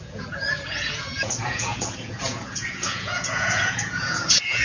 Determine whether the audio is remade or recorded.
remade